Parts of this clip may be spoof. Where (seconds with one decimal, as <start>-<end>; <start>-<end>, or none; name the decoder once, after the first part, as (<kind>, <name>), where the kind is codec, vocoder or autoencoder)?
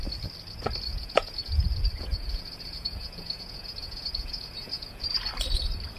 0.9-1.6 (vocoder, Vocos); 2.1-5.1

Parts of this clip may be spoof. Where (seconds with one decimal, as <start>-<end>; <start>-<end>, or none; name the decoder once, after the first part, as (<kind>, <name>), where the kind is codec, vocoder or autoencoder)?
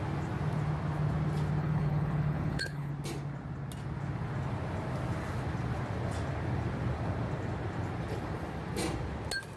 1.6-2.9 (codec, HILCodec)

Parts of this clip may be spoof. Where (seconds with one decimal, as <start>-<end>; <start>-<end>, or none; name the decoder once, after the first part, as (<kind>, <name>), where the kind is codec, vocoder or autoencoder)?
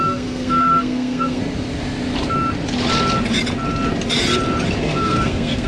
0.0-1.4 (codec, SNAC); 4.8-5.7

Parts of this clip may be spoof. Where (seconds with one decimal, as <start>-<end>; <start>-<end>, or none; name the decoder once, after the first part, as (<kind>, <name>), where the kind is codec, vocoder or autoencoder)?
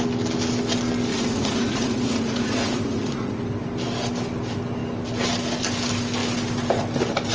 1.1-3.4 (vocoder, Vocos)